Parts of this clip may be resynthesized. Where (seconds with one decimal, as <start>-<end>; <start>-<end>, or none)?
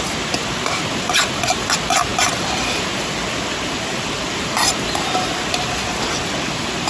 none